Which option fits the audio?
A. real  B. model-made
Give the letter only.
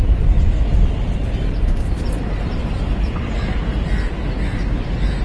A